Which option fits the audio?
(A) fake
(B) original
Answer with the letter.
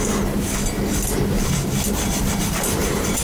B